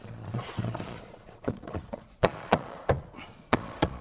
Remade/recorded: remade